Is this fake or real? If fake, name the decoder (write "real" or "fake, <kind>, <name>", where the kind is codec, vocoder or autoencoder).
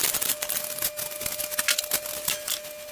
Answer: real